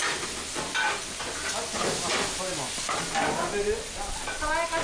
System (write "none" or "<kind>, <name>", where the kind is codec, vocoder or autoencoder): none